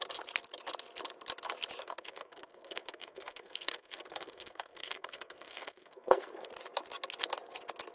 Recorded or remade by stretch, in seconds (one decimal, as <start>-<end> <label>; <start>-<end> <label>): 0.0-1.8 recorded; 1.8-6.5 remade; 6.5-7.9 recorded